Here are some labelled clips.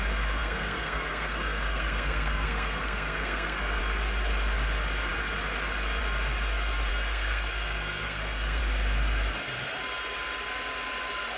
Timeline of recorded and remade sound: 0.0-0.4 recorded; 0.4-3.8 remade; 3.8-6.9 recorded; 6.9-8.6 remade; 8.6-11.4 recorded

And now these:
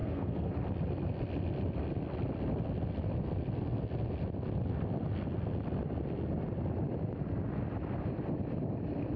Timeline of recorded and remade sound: 0.0-0.5 remade; 0.5-9.2 recorded